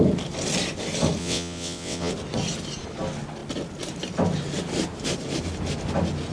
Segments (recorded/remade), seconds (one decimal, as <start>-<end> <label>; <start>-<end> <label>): 0.0-1.2 recorded; 1.2-2.1 remade; 2.1-6.3 recorded

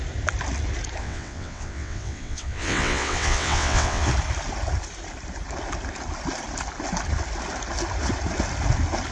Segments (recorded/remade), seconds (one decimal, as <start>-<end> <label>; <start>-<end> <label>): 0.0-1.0 recorded; 1.0-4.1 remade; 4.1-9.1 recorded

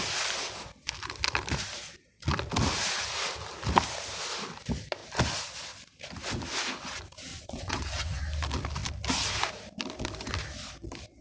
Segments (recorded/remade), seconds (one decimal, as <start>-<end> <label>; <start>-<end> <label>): 0.0-7.3 recorded; 7.3-8.2 remade; 8.2-11.2 recorded

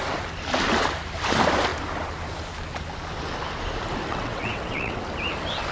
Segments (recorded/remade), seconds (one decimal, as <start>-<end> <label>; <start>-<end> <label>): 0.0-4.1 recorded; 4.1-5.0 remade; 5.0-5.7 recorded

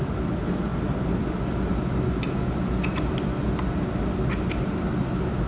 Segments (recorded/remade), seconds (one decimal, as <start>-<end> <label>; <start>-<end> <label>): 0.0-5.5 recorded

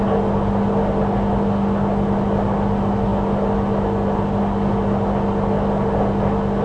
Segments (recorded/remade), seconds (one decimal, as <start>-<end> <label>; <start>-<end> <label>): 0.0-6.6 recorded